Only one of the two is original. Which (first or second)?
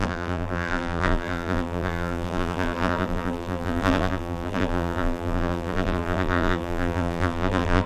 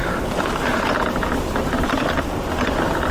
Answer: second